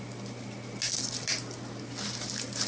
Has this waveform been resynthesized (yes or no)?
no